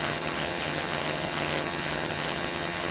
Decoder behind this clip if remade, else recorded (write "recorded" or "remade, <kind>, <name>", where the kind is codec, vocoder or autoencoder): remade, vocoder, HiFi-GAN